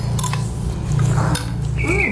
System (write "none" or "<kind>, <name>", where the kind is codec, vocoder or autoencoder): none